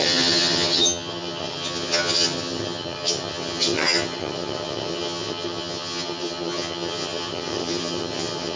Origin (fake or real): fake